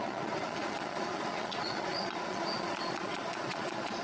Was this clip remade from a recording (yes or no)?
yes